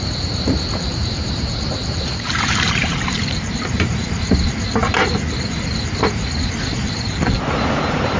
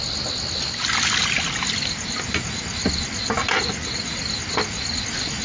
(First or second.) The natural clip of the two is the second